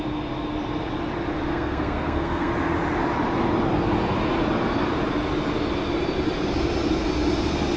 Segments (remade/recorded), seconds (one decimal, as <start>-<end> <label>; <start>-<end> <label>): 0.0-1.5 recorded; 1.5-2.5 remade; 2.5-7.8 recorded